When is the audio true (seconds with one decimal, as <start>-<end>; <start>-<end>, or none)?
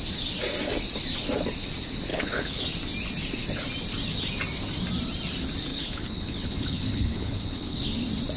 0.0-2.1; 2.6-5.7; 7.8-8.4